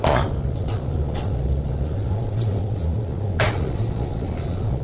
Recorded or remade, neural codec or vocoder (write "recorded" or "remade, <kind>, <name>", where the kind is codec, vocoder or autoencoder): remade, vocoder, Vocos